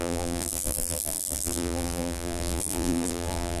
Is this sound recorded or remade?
remade